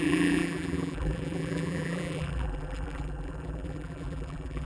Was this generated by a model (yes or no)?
yes